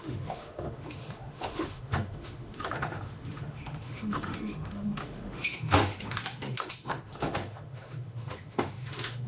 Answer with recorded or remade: remade